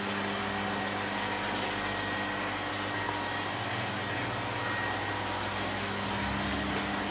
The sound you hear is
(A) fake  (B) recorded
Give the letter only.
B